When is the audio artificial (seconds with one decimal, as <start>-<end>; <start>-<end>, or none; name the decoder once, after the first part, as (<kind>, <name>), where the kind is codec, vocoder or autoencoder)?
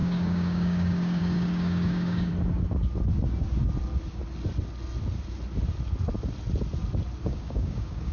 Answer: 0.0-2.3 (codec, DAC); 7.2-8.1